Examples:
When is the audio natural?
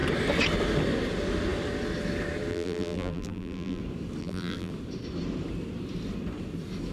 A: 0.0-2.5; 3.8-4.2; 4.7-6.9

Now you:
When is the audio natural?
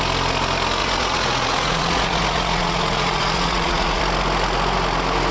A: 0.0-0.8; 4.0-5.3